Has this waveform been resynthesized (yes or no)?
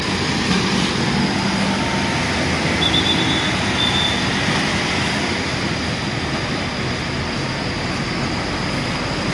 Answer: no